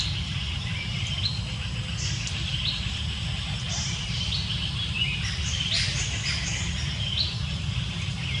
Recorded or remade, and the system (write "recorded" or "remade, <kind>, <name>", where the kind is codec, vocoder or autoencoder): recorded